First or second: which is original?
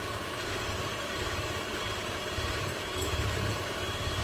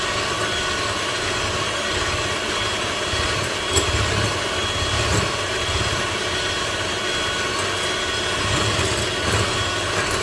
second